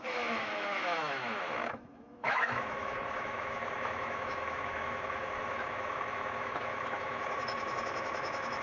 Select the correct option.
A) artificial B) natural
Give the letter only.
A